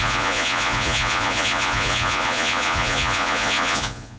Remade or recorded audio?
remade